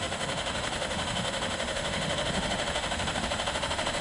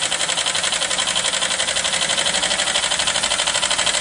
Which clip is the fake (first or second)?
first